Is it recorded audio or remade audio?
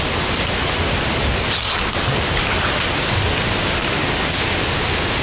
recorded